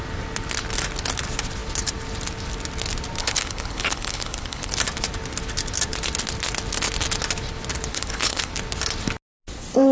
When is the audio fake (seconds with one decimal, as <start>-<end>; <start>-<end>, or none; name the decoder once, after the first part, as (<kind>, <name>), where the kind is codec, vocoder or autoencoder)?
3.2-4.7 (codec, HILCodec); 7.9-8.5